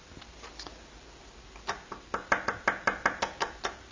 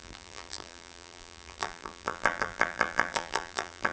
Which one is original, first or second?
first